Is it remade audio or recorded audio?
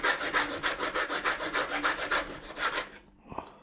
remade